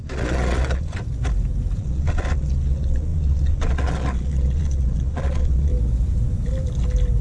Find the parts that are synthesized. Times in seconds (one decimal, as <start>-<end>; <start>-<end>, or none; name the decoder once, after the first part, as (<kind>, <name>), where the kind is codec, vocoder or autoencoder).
0.0-1.0 (vocoder, Vocos); 1.8-5.7